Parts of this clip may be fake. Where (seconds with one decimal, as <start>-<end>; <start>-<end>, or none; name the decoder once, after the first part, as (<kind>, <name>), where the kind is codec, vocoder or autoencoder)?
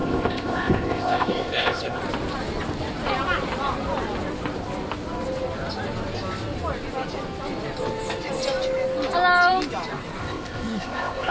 0.0-2.0 (codec, ZipCodec); 10.2-11.3